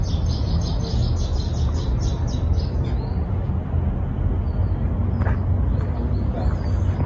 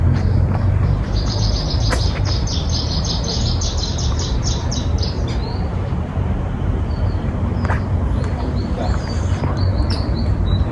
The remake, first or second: second